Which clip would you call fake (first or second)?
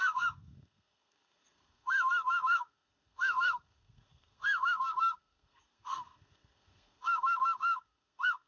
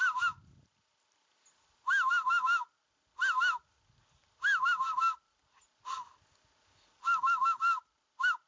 first